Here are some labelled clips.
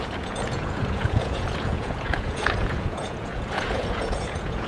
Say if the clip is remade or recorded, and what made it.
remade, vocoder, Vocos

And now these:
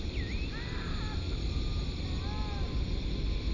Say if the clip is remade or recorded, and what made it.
recorded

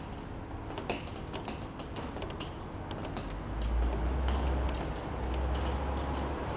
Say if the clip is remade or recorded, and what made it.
recorded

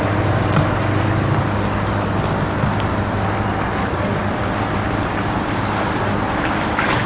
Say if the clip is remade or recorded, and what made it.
recorded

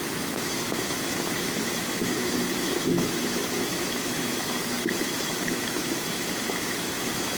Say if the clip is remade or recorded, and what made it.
remade, autoencoder, DAC-VAE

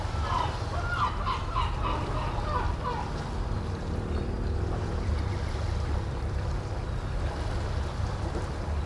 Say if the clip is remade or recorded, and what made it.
recorded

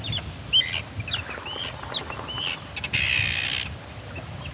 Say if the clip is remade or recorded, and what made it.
recorded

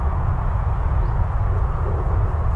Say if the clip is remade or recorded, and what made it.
remade, vocoder, Vocos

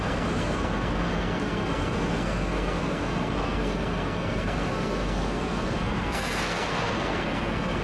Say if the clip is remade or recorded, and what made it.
remade, codec, SNAC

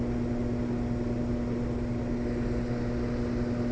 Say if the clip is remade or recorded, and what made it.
recorded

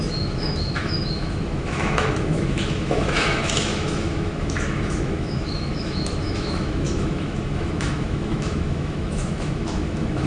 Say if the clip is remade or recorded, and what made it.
remade, autoencoder, DAC-VAE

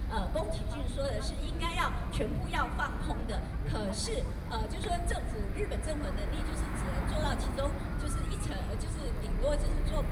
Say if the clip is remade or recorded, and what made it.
recorded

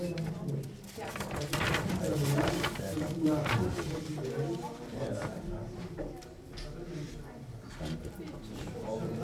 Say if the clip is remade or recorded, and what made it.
recorded